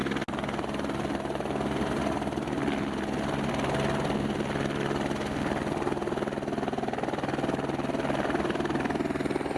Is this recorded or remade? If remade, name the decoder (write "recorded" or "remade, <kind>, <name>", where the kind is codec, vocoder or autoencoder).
recorded